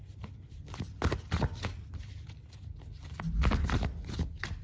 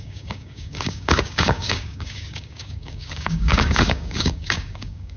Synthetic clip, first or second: second